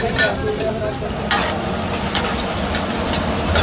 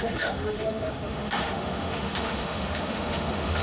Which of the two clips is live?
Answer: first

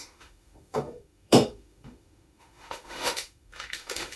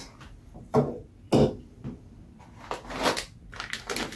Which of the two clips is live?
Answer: second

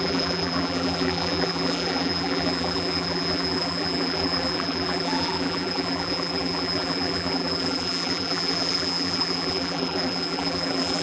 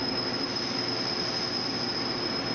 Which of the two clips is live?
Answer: second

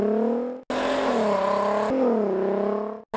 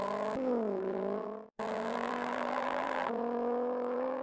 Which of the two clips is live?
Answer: first